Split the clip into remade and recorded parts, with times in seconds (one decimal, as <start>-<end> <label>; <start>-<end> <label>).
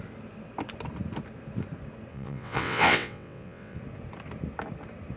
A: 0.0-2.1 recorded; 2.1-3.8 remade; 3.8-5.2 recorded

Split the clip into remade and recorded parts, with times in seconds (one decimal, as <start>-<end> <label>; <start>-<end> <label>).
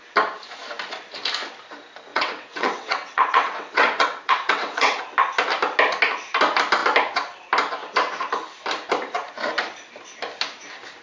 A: 0.0-2.1 recorded; 2.1-5.0 remade; 5.0-11.0 recorded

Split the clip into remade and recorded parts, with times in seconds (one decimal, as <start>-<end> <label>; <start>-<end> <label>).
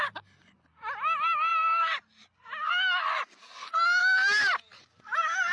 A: 0.0-5.5 recorded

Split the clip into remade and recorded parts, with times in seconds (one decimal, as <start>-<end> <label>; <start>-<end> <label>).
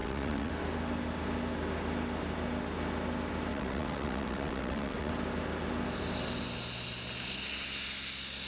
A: 0.0-0.5 remade; 0.5-3.5 recorded; 3.5-5.1 remade; 5.1-8.5 recorded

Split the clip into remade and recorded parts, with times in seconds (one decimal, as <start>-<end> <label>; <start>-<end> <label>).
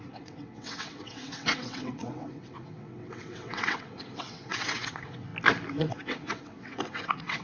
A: 0.0-5.3 remade; 5.3-5.8 recorded; 5.8-7.4 remade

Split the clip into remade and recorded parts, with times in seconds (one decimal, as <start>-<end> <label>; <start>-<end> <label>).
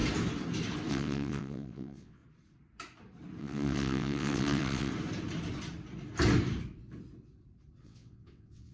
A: 0.0-0.9 recorded; 0.9-2.2 remade; 2.2-3.4 recorded; 3.4-4.9 remade; 4.9-7.8 recorded; 7.8-8.7 remade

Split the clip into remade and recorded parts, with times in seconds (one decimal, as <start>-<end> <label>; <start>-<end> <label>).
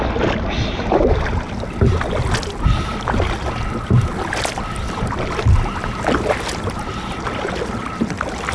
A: 0.0-8.5 recorded